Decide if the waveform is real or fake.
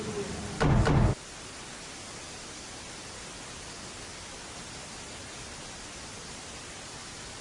real